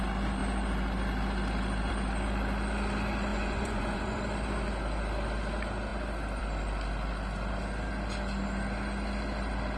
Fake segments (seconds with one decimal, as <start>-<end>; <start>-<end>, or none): 3.3-4.2